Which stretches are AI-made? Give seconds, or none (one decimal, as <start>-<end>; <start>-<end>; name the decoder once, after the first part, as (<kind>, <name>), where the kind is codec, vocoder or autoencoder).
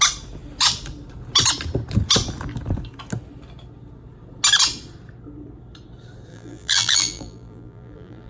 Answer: 6.3-8.3 (vocoder, BigVGAN v2)